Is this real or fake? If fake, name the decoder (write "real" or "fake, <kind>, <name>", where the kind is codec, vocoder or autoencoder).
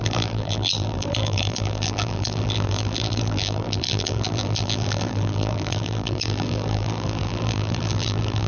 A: fake, vocoder, BigVGAN v2